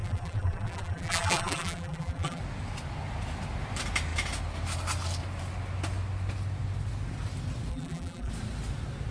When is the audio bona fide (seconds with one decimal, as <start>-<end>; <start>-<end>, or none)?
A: 2.4-7.7; 8.3-9.1